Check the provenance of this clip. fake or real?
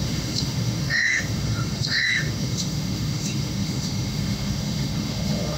fake